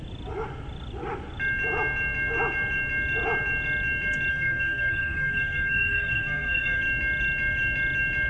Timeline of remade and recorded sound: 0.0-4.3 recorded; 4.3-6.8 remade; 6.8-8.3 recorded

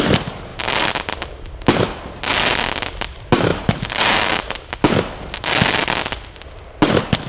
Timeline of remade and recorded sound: 0.0-7.3 recorded

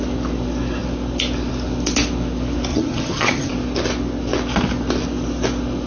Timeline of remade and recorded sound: 0.0-2.7 recorded; 2.7-3.5 remade; 3.5-5.9 recorded

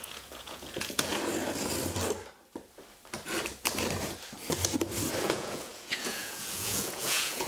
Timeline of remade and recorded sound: 0.0-1.1 remade; 1.1-5.2 recorded; 5.2-7.5 remade

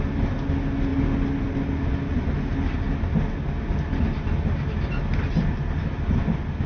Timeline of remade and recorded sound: 0.0-6.7 recorded

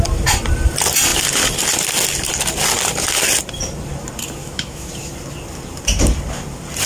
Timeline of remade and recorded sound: 0.0-4.4 recorded; 4.4-4.9 remade; 4.9-6.9 recorded

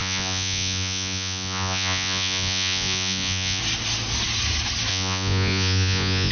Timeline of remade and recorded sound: 0.0-3.6 remade; 3.6-4.9 recorded; 4.9-6.3 remade

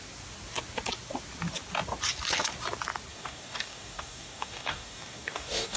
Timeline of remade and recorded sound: 0.0-3.1 recorded; 3.1-5.8 remade